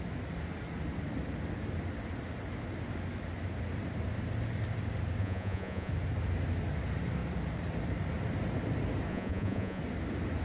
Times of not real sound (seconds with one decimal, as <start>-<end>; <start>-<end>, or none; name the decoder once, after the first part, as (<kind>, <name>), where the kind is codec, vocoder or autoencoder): 5.2-5.9 (vocoder, Vocos); 9.1-9.8